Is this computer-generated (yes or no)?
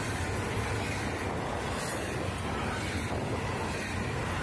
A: no